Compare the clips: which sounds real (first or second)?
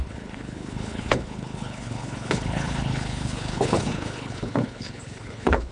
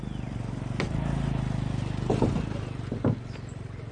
second